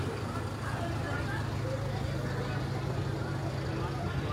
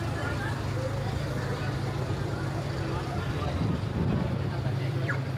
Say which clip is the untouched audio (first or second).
first